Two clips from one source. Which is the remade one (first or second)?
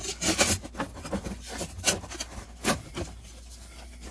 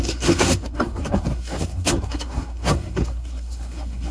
second